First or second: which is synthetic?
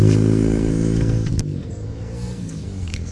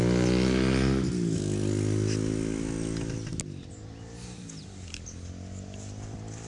first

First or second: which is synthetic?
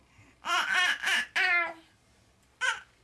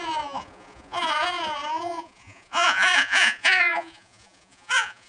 second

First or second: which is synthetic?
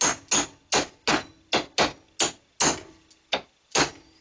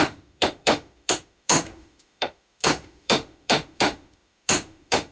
second